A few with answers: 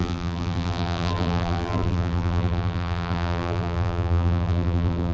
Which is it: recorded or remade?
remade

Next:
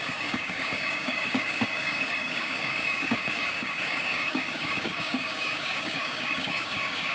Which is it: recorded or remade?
remade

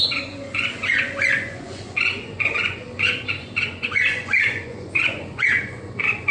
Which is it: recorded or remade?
remade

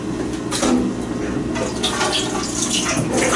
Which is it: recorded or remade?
recorded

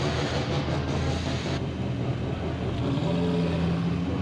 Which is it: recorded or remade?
recorded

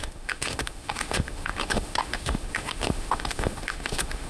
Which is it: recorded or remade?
remade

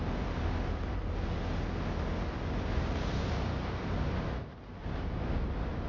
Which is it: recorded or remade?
recorded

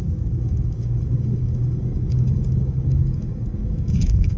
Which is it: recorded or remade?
remade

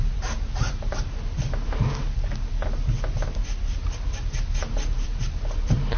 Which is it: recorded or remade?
recorded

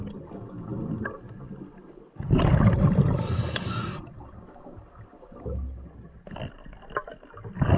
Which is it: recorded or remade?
recorded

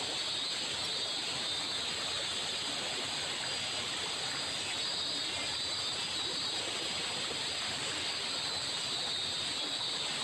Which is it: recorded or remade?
recorded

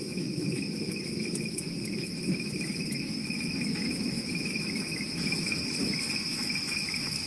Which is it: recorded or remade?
remade